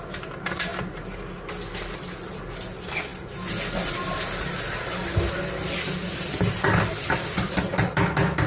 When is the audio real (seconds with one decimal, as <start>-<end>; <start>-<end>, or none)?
0.0-8.5